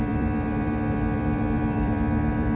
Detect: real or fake fake